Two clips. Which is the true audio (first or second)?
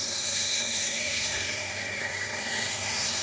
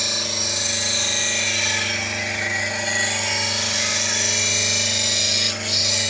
second